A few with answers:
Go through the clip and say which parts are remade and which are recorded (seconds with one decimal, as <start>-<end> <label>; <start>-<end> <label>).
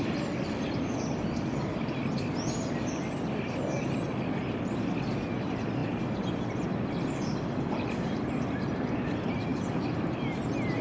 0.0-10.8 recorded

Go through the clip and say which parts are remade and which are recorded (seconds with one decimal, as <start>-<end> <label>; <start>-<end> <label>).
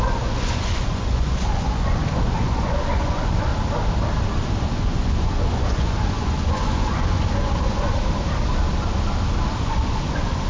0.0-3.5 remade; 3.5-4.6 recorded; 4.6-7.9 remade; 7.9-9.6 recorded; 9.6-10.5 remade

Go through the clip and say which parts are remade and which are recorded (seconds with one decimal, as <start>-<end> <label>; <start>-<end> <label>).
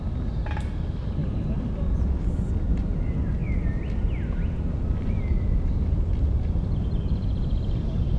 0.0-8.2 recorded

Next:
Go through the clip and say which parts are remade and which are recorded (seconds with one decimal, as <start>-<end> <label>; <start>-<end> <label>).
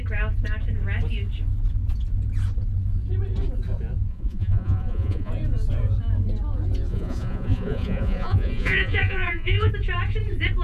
0.0-4.1 recorded; 4.1-5.3 remade; 5.3-6.9 recorded; 6.9-9.7 remade; 9.7-10.6 recorded